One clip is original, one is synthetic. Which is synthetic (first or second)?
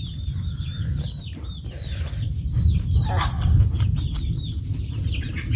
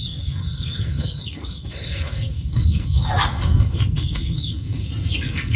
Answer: second